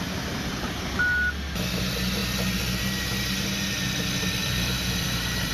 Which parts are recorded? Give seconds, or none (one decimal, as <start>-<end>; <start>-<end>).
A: 0.0-4.4

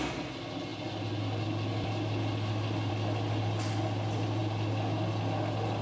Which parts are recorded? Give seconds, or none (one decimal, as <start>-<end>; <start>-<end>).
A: 0.0-5.8

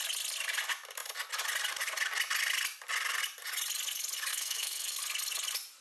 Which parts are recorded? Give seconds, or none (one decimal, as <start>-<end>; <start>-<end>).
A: 0.0-4.3; 5.0-5.8